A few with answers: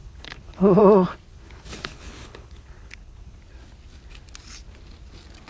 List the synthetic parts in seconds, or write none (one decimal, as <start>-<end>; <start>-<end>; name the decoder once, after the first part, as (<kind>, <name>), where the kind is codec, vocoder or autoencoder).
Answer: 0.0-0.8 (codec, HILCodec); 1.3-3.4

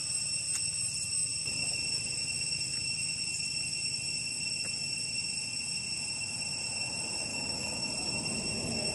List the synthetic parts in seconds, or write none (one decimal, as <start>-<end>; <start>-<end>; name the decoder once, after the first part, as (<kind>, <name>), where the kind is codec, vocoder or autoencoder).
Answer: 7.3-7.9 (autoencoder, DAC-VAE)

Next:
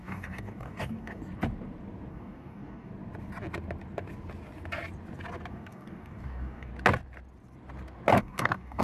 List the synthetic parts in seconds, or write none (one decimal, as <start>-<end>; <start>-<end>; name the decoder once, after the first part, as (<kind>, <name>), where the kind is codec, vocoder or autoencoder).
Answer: 0.0-1.2 (codec, DAC); 2.1-2.9; 5.5-6.7; 8.2-8.8

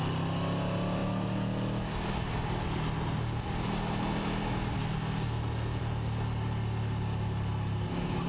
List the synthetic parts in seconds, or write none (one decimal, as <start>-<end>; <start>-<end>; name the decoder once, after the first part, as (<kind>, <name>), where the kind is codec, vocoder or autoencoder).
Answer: none

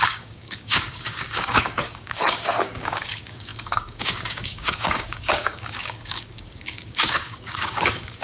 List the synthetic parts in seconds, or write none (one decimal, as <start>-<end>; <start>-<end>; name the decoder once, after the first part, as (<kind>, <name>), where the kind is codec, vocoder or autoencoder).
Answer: 0.0-8.2 (codec, DAC)

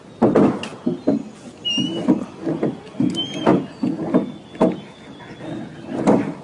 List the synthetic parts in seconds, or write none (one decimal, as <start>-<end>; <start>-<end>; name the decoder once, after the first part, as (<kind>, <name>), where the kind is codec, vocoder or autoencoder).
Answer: none

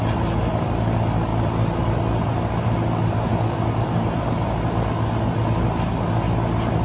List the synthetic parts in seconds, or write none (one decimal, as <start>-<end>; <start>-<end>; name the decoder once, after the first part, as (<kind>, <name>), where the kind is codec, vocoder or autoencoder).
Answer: 1.3-1.9 (vocoder, BigVGAN v2); 3.3-4.3